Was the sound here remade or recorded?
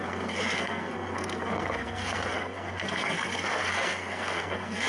remade